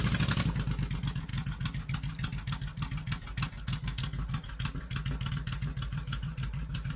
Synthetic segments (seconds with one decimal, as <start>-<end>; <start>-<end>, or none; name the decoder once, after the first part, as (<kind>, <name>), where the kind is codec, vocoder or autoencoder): none